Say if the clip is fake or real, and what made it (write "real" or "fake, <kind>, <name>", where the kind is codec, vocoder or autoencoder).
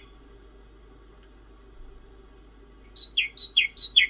real